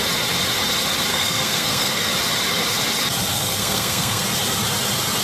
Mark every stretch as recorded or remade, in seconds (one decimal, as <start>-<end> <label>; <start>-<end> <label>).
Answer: 0.0-1.1 recorded; 1.1-2.1 remade; 2.1-3.3 recorded; 3.3-4.2 remade; 4.2-5.2 recorded

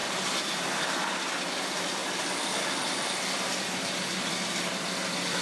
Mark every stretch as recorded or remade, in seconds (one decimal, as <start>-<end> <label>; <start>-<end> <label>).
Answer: 0.0-0.5 remade; 0.5-2.0 recorded; 2.0-5.4 remade

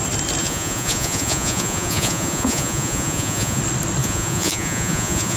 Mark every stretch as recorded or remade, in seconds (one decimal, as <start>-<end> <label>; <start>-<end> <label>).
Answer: 0.0-0.4 recorded; 0.4-3.6 remade; 3.6-4.0 recorded; 4.0-5.4 remade

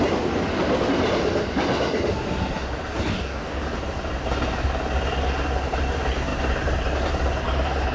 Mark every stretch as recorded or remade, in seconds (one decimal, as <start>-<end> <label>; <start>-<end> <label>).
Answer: 0.0-3.1 recorded; 3.1-3.6 remade; 3.6-7.9 recorded